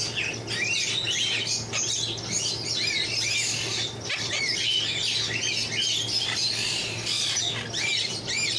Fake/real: real